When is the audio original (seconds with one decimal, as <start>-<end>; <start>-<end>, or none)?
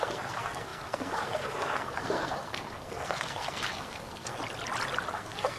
4.4-5.1